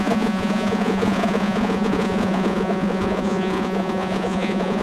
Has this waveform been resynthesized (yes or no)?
yes